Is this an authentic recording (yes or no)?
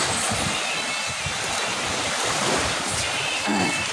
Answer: yes